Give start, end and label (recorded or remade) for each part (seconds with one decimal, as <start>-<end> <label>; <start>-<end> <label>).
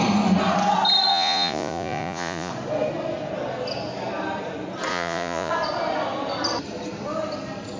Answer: 0.0-1.1 recorded; 1.1-2.5 remade; 2.5-4.9 recorded; 4.9-5.5 remade; 5.5-7.8 recorded